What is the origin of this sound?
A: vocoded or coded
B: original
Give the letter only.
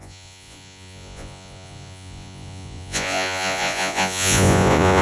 A